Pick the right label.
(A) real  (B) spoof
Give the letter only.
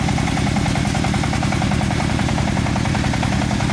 B